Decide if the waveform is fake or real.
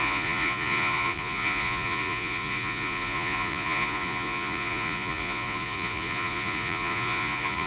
fake